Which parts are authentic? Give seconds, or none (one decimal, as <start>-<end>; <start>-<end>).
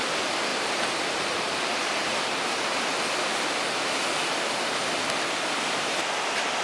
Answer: 0.0-0.5; 2.8-6.6